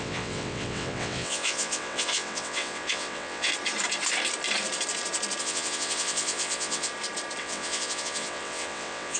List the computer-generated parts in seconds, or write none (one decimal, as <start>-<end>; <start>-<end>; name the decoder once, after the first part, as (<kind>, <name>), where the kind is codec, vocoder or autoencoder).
0.0-3.5 (vocoder, WaveNeXt); 5.4-6.9; 7.4-9.2

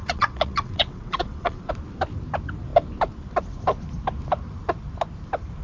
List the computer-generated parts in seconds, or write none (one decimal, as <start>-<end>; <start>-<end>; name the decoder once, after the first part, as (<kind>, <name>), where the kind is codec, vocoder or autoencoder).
0.0-1.7 (vocoder, WaveNeXt)

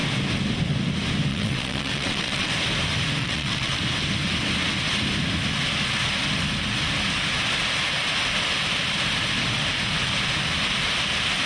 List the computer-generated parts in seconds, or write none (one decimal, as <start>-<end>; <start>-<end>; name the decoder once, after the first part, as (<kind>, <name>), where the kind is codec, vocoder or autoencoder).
1.3-2.5 (vocoder, WaveNeXt); 3.2-3.8

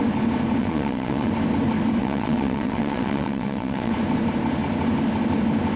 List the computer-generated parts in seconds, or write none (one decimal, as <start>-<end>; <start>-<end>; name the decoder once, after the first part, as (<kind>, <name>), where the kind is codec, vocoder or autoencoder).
0.6-1.3 (vocoder, WaveNeXt); 2.0-3.9

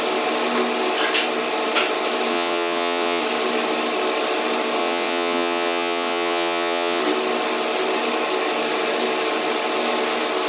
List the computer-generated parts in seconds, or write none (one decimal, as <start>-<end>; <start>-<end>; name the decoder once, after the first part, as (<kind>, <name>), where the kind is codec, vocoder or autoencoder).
2.3-3.2 (vocoder, WaveNeXt); 4.8-7.0

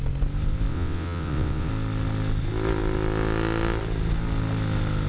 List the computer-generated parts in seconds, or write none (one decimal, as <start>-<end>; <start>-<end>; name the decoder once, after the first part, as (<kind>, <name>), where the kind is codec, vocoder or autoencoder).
0.7-1.7 (vocoder, WaveNeXt)